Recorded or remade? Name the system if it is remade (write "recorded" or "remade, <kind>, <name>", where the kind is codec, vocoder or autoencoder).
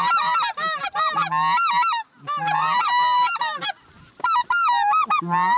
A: recorded